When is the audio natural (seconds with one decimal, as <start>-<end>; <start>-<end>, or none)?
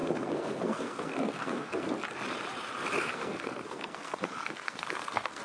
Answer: 1.9-3.0